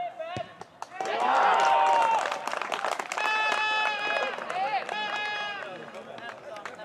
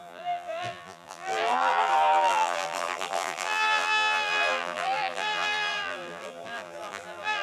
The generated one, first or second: second